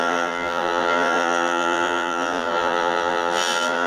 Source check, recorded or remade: remade